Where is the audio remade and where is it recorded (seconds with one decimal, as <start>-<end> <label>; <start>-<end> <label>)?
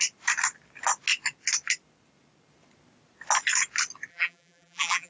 0.0-4.1 recorded; 4.1-5.1 remade